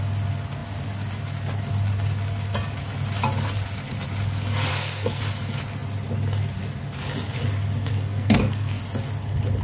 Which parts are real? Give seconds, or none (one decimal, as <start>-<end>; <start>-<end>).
0.0-4.7; 5.2-7.9; 8.8-9.6